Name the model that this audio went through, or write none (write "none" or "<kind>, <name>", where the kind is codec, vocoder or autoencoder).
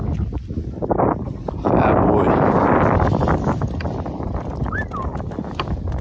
none